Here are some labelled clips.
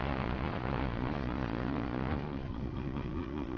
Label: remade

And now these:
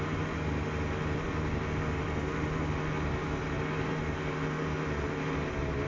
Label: recorded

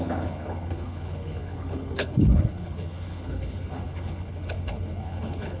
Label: remade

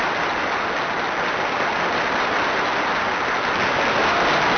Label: recorded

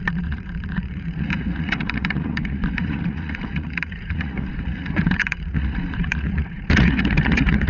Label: remade